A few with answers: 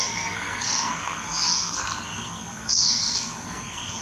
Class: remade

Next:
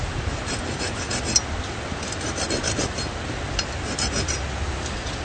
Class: recorded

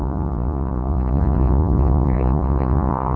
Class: remade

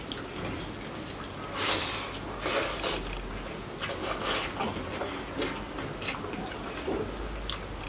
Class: recorded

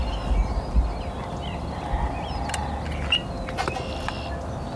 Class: recorded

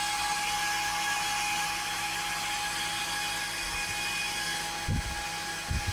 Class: recorded